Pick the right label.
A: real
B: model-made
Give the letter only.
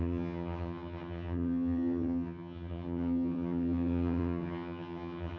B